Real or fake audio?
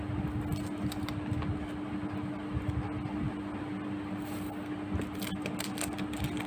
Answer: real